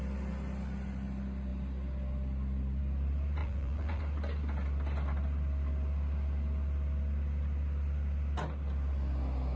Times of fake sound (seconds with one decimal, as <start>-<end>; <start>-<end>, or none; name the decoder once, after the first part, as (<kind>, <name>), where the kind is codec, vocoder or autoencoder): 3.4-4.0 (vocoder, Vocos)